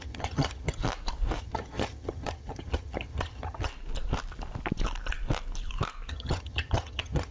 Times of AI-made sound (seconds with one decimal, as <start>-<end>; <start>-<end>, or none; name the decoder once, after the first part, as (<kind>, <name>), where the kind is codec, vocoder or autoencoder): 0.0-0.8 (vocoder, HiFi-GAN); 1.4-3.7; 6.1-7.3